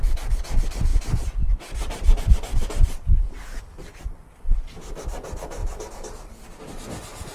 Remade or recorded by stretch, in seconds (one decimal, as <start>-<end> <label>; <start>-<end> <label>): 0.0-7.3 recorded